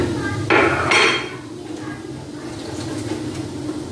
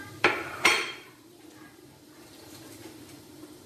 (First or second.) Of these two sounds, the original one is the first